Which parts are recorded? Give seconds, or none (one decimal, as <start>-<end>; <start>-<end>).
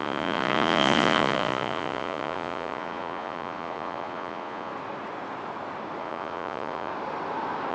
4.7-6.0; 6.9-7.7